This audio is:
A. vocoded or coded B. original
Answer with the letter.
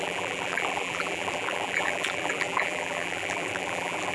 A